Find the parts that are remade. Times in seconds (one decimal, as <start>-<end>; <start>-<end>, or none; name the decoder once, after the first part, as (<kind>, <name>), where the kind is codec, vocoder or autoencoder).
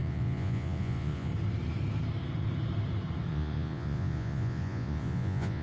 0.0-1.3 (vocoder, Vocos); 3.3-5.6